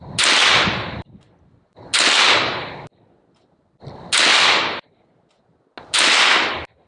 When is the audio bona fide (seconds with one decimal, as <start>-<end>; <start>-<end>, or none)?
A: 0.0-6.9